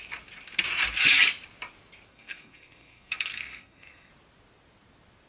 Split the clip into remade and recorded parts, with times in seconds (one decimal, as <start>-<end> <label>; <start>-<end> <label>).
0.0-2.1 recorded; 2.1-4.1 remade; 4.1-5.3 recorded